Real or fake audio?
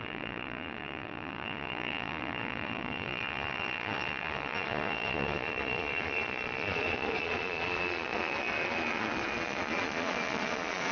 fake